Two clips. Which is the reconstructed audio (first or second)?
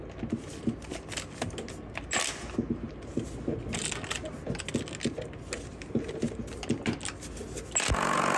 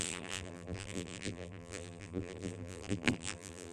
second